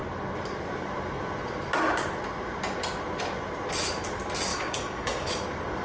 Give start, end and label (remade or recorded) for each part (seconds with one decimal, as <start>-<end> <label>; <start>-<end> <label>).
0.0-4.5 recorded; 4.5-5.3 remade; 5.3-5.8 recorded

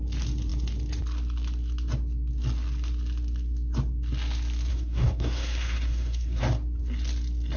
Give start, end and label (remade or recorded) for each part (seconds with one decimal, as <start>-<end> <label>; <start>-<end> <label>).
0.0-4.7 recorded; 4.7-6.4 remade; 6.4-7.6 recorded

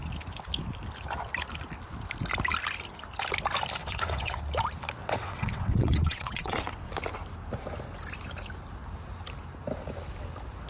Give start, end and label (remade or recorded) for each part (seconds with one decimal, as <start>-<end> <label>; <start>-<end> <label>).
0.0-3.8 recorded; 3.8-4.4 remade; 4.4-5.0 recorded; 5.0-6.9 remade; 6.9-10.7 recorded

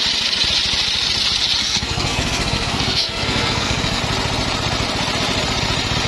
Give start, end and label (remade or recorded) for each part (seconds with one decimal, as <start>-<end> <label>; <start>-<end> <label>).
0.0-1.6 recorded; 1.6-4.0 remade; 4.0-6.1 recorded

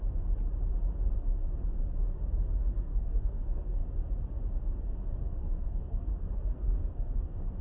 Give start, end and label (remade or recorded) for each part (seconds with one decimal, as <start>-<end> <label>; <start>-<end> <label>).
0.0-2.7 recorded; 2.7-3.8 remade; 3.8-5.2 recorded; 5.2-7.6 remade

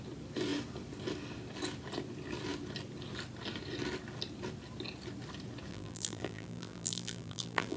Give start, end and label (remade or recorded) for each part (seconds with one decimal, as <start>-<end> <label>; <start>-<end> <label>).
0.0-5.7 recorded; 5.7-7.8 remade

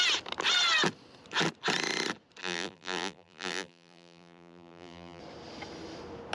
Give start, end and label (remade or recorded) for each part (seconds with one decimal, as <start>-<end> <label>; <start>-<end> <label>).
0.0-2.4 recorded; 2.4-5.2 remade; 5.2-6.3 recorded